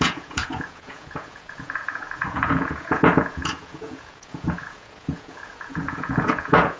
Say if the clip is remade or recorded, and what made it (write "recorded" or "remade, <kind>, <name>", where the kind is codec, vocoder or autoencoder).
remade, vocoder, Vocos